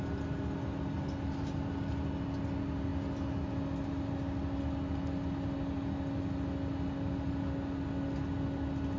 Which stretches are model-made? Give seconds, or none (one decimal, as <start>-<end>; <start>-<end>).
none

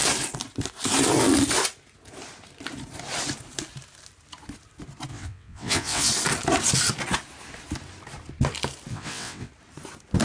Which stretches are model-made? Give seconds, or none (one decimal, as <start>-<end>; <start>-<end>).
5.1-6.1; 8.9-9.5

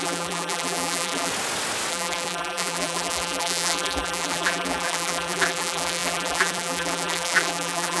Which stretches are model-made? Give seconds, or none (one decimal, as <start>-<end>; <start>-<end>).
0.0-1.3; 1.9-8.0

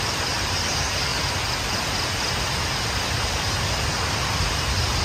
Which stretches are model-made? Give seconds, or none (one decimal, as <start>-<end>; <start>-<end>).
0.0-1.1; 4.1-5.0

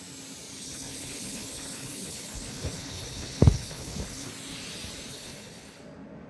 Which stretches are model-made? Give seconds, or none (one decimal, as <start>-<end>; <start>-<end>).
0.5-4.3; 5.1-5.8

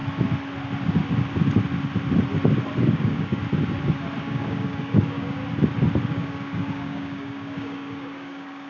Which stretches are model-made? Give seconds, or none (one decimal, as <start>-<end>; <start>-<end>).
2.8-3.4; 4.2-5.4; 6.1-8.7

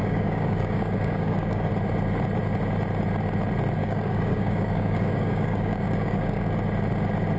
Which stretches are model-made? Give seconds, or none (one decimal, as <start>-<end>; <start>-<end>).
0.0-1.7; 3.8-6.6